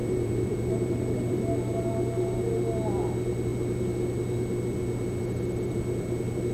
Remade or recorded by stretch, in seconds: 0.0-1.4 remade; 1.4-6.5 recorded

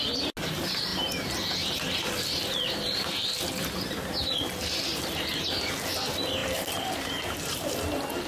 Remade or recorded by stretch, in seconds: 0.0-4.9 recorded; 4.9-5.8 remade; 5.8-6.4 recorded; 6.4-7.7 remade; 7.7-8.3 recorded

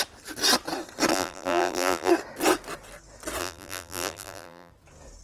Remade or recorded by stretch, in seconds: 0.0-1.1 recorded; 1.1-2.1 remade; 2.1-3.4 recorded; 3.4-4.7 remade; 4.7-5.2 recorded

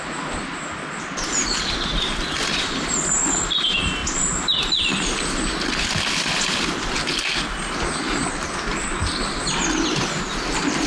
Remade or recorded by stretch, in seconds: 0.0-1.9 recorded; 1.9-3.5 remade; 3.5-10.9 recorded

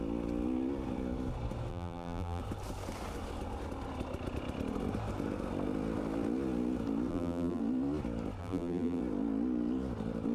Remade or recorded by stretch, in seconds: 0.0-1.7 recorded; 1.7-2.4 remade; 2.4-7.1 recorded; 7.1-7.6 remade; 7.6-8.4 recorded; 8.4-9.0 remade; 9.0-10.3 recorded

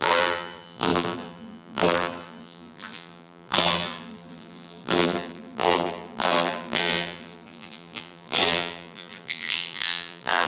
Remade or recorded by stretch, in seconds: 0.0-10.5 remade

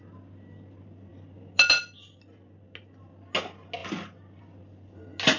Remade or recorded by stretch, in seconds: 0.0-5.4 recorded